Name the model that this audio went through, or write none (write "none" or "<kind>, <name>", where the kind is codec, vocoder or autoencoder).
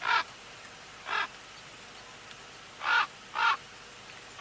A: none